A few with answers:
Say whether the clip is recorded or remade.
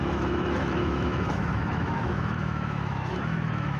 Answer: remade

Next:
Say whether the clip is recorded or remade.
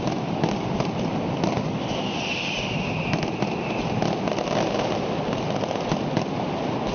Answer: recorded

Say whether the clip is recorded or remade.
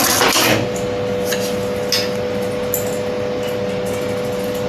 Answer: recorded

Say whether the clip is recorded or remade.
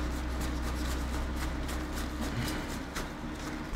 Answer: recorded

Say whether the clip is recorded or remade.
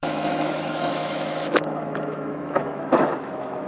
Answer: remade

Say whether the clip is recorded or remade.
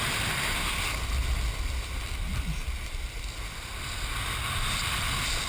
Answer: recorded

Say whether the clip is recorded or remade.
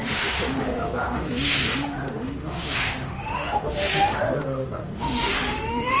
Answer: remade